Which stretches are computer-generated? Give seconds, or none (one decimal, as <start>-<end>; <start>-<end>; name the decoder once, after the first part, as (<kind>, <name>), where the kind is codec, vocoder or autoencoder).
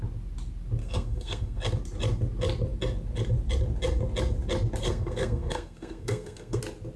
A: 0.8-1.6 (codec, SNAC); 4.8-6.6